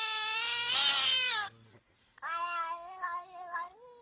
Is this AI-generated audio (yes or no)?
no